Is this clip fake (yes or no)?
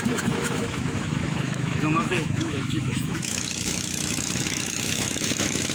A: yes